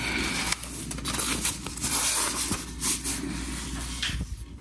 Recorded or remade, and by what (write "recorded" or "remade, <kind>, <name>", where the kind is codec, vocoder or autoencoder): recorded